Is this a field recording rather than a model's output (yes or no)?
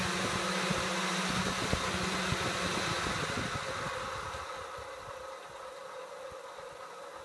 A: yes